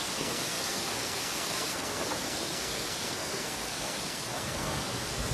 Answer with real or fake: fake